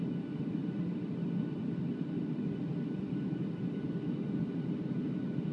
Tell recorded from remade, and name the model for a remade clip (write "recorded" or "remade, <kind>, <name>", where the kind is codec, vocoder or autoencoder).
recorded